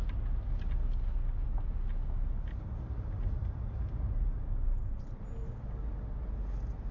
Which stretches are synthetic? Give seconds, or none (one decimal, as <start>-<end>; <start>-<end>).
3.4-5.0

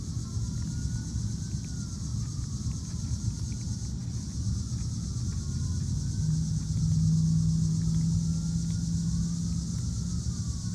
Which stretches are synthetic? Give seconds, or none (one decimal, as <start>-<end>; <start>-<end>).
2.1-2.6

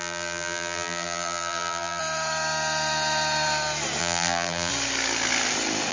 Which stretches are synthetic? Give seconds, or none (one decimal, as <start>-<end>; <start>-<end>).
0.0-2.0; 4.0-4.7

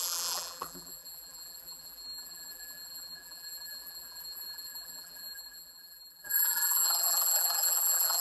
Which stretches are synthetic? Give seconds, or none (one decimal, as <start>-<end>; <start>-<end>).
0.0-8.2

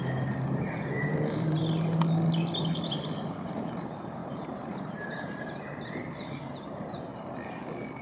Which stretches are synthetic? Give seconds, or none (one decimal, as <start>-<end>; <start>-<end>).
0.0-1.6; 2.7-7.1

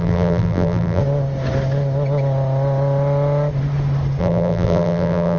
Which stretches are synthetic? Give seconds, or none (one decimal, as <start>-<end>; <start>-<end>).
0.0-1.0; 4.2-5.4